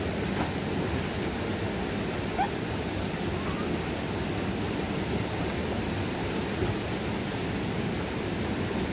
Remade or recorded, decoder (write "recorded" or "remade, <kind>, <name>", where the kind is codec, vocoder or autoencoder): recorded